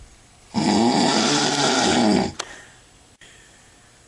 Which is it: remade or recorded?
recorded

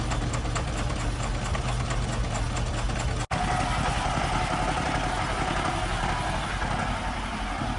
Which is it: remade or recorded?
recorded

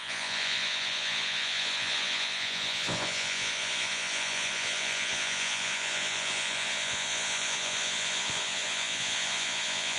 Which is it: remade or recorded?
remade